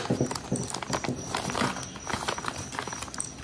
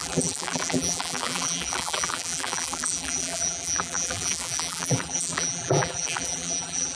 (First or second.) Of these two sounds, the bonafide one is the first